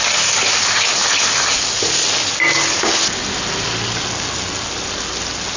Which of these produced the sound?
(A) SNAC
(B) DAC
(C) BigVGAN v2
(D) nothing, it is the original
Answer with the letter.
D